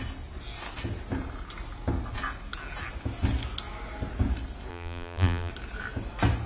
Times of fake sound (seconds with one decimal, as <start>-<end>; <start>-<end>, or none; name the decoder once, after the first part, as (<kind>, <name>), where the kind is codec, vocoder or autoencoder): 4.7-5.5 (vocoder, BigVGAN v2)